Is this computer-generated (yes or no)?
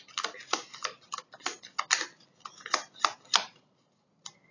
no